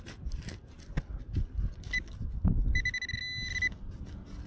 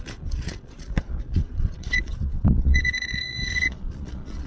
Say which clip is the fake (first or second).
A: second